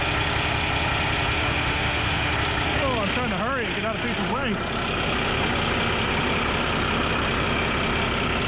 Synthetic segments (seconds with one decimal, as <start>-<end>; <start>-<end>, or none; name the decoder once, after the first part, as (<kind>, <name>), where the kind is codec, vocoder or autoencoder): 1.4-2.3 (autoencoder, DAC-VAE)